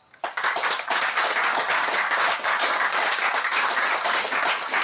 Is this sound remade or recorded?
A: remade